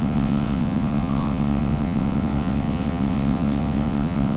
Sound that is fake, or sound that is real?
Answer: fake